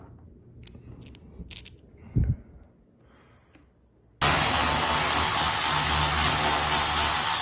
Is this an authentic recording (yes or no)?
yes